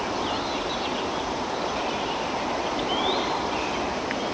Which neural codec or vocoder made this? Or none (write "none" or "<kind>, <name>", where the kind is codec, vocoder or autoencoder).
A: none